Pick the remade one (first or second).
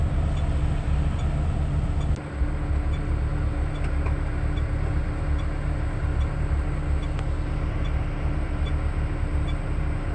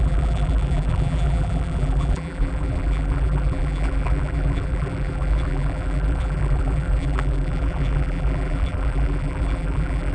second